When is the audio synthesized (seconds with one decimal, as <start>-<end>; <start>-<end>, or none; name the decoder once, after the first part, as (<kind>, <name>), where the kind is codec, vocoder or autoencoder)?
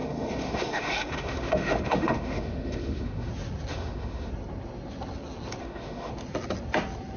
0.0-3.3 (autoencoder, DAC-VAE); 3.7-4.3; 5.6-6.1